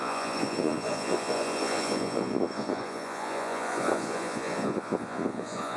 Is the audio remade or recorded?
remade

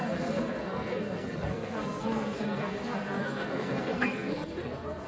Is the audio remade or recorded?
remade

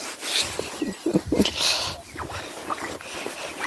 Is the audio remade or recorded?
recorded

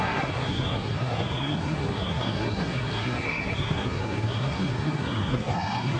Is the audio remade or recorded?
remade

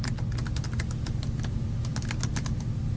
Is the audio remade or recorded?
recorded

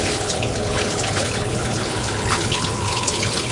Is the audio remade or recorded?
remade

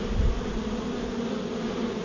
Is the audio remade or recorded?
recorded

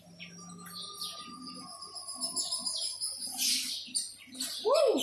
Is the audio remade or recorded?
recorded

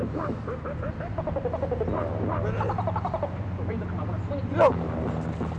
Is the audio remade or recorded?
recorded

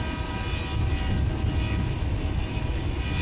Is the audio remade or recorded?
recorded